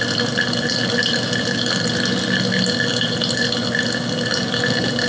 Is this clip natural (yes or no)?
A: yes